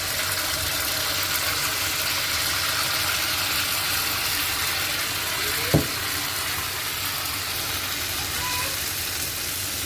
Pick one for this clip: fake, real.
real